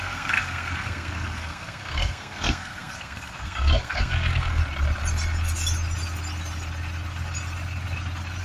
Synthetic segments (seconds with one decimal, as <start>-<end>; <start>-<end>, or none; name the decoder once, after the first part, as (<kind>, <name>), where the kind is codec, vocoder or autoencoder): 0.0-4.6 (codec, SNAC)

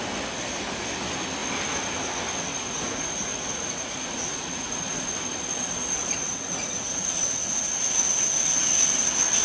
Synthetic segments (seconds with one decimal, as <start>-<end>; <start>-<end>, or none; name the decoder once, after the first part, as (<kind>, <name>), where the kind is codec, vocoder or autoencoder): 2.5-5.1 (vocoder, Vocos); 6.0-7.3

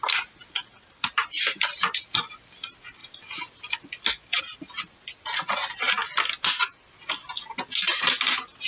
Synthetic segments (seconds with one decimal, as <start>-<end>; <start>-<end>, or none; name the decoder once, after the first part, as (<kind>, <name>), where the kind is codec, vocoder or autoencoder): 0.7-1.9 (vocoder, BigVGAN v2)

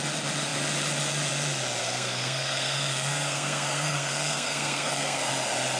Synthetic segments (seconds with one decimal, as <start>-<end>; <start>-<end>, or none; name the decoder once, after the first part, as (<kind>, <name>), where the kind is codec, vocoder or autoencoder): 1.8-5.3 (codec, SNAC)

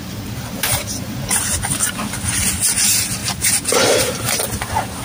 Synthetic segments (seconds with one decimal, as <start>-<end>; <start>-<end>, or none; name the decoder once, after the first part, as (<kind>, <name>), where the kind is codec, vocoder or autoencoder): 0.0-1.4 (vocoder, BigVGAN v2); 3.2-4.1

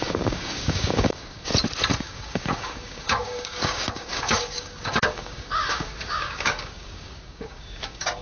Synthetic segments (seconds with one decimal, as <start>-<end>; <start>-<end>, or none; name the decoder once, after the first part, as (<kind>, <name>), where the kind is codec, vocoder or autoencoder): 0.0-1.5 (codec, DAC); 2.0-8.2